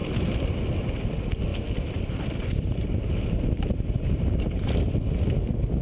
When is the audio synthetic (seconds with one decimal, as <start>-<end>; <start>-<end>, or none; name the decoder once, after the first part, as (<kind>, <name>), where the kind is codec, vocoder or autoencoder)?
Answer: 0.0-0.6 (vocoder, BigVGAN v2); 1.5-4.9